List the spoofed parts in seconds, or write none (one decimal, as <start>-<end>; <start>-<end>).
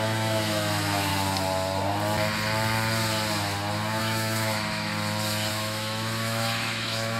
0.0-1.1; 4.0-4.9; 5.5-7.2